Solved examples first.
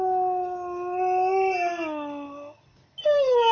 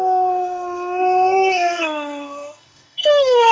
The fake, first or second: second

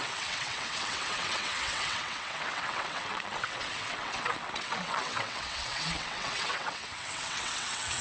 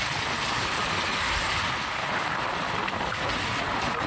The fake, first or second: first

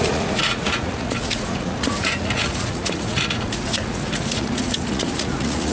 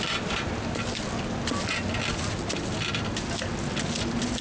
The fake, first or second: first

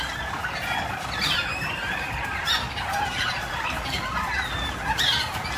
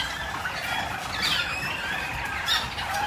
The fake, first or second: second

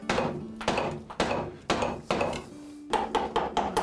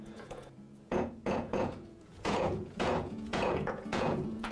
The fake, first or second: second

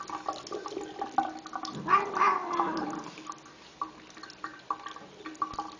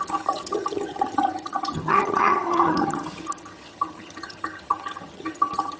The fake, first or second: second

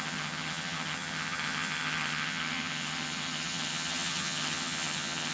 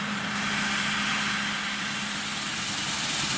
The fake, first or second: first